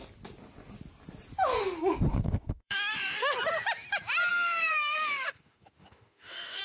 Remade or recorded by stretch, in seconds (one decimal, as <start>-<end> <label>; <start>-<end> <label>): 0.0-2.1 recorded; 2.1-3.3 remade; 3.3-4.3 recorded; 4.3-6.6 remade